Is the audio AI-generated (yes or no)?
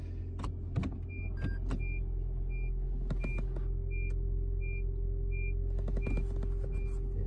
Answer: no